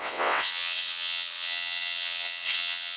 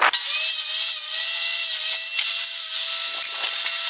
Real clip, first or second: second